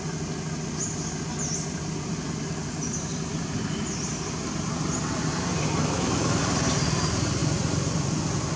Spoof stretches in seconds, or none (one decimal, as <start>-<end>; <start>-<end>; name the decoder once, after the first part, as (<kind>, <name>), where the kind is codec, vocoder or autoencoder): 5.8-6.4 (autoencoder, DAC-VAE)